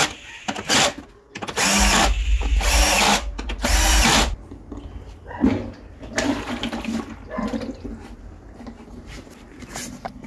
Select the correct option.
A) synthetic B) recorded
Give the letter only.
B